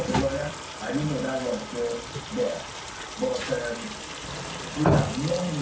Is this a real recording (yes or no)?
yes